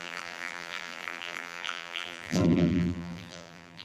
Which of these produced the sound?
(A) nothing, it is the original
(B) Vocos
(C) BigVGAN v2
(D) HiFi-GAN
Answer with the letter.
C